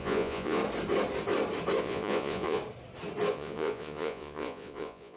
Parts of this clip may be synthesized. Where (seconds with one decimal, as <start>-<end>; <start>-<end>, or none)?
0.0-0.6; 1.8-2.6; 3.3-5.2